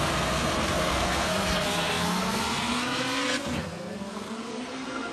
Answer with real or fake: fake